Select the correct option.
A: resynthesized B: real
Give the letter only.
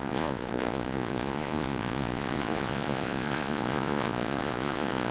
A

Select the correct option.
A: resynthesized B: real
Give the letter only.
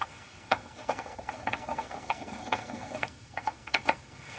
A